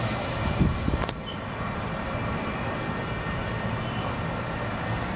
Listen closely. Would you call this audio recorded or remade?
recorded